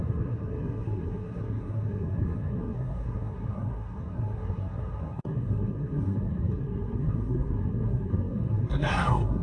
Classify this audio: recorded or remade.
remade